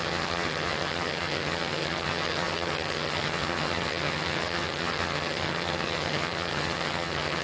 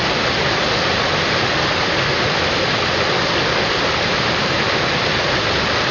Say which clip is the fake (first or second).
first